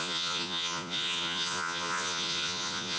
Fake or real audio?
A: fake